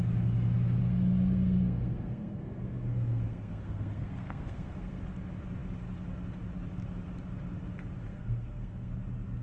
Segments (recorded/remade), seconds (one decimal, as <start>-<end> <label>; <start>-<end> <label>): 0.0-0.8 recorded; 0.8-5.0 remade; 5.0-8.1 recorded; 8.1-8.9 remade; 8.9-9.4 recorded